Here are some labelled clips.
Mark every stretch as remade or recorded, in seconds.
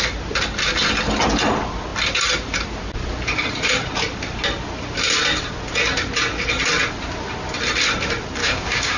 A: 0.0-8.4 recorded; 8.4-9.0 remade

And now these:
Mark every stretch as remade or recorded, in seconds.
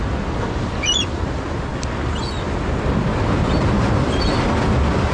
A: 0.0-5.1 recorded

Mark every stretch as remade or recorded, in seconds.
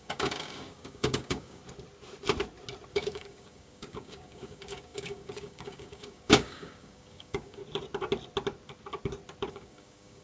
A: 0.0-1.6 remade; 1.6-2.9 recorded; 2.9-7.6 remade; 7.6-9.5 recorded; 9.5-10.2 remade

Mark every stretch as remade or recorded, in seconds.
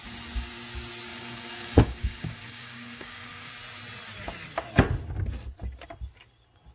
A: 0.0-1.1 recorded; 1.1-3.5 remade; 3.5-6.7 recorded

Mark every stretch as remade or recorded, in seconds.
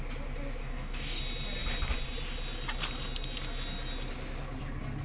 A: 0.0-0.6 recorded; 0.6-1.2 remade; 1.2-5.0 recorded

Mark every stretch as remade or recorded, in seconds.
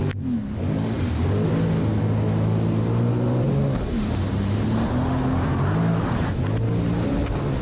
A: 0.0-1.5 remade; 1.5-7.6 recorded